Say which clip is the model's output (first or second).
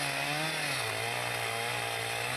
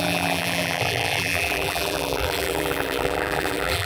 second